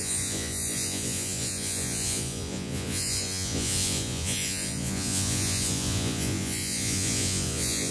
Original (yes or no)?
no